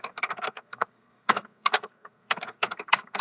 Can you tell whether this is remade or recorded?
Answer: remade